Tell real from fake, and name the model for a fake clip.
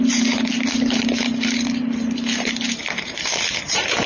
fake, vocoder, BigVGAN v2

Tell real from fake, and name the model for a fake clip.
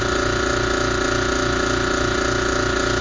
real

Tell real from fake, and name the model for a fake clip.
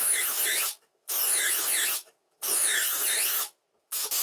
fake, autoencoder, DAC-VAE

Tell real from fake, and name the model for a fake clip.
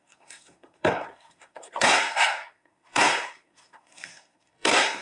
fake, codec, SNAC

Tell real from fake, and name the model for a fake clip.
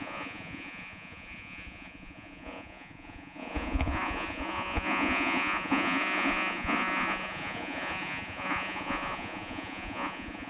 fake, vocoder, Vocos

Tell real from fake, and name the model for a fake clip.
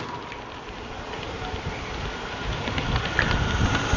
real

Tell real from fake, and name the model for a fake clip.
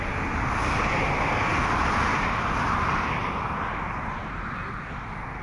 real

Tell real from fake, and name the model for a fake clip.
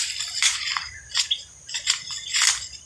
real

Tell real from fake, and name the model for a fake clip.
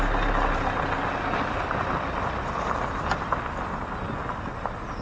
real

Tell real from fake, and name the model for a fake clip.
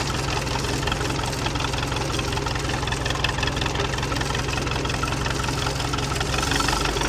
real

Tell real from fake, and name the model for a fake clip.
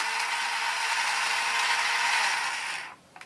real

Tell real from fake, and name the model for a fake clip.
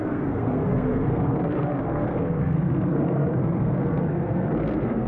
fake, codec, SNAC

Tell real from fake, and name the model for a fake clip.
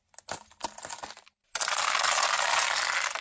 real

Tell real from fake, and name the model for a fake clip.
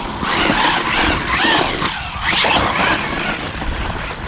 real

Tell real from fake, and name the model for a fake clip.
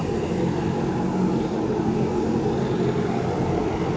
real